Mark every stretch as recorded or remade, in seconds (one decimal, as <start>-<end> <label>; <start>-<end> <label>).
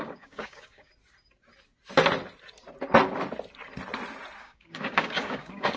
0.0-0.9 remade; 0.9-4.4 recorded; 4.4-5.8 remade